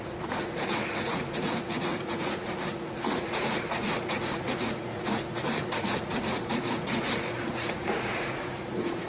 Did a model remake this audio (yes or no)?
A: yes